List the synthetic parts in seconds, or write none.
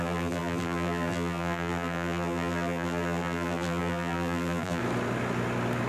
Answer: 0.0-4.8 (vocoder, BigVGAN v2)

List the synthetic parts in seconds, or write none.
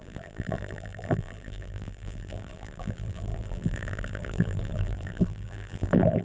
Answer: 0.0-6.2 (vocoder, BigVGAN v2)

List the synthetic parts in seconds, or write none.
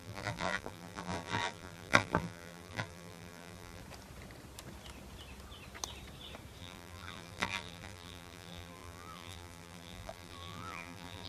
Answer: 0.0-3.8 (vocoder, BigVGAN v2); 6.6-11.3